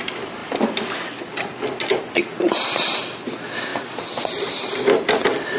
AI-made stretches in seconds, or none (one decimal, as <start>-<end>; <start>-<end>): none